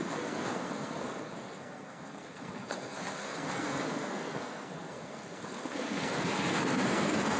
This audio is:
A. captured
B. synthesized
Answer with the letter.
B